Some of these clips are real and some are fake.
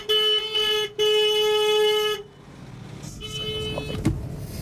real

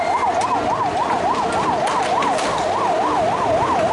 real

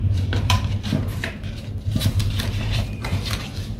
fake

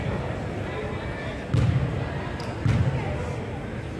real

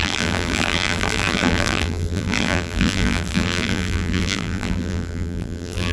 fake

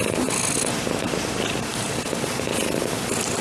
real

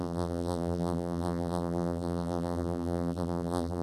fake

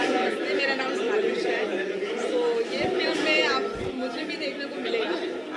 real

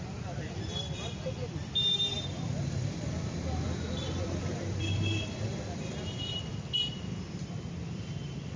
fake